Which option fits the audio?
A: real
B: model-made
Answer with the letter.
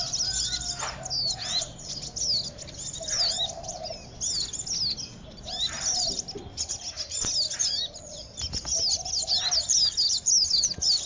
A